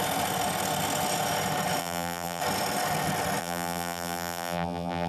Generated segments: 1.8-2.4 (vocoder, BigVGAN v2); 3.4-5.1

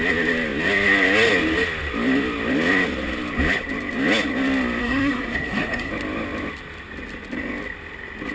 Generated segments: 4.8-5.9 (codec, SNAC)